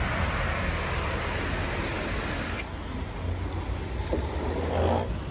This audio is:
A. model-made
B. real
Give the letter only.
B